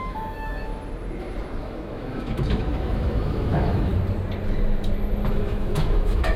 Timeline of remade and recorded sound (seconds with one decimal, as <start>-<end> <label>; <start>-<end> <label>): 0.0-0.7 remade; 0.7-1.6 recorded; 1.6-3.9 remade; 3.9-5.3 recorded; 5.3-6.4 remade